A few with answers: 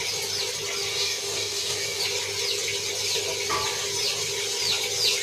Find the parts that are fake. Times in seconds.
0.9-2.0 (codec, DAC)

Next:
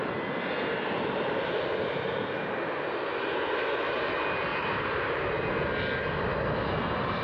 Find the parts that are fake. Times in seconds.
4.5-5.5 (vocoder, BigVGAN v2)

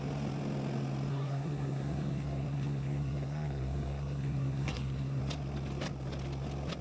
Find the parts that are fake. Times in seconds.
1.1-5.2 (codec, SNAC)